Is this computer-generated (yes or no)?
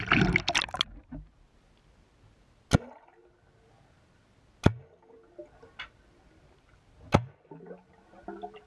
no